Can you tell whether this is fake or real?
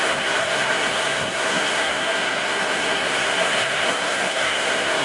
fake